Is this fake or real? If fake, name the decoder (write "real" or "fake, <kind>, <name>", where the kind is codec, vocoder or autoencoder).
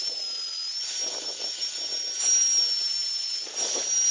real